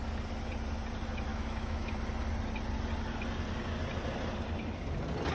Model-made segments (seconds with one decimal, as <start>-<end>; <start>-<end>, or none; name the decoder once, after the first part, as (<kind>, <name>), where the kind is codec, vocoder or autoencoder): 1.3-1.9 (autoencoder, DAC-VAE)